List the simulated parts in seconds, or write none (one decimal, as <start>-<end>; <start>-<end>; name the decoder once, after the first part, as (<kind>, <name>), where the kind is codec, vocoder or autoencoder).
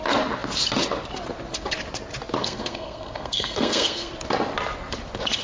2.4-4.1 (codec, SNAC)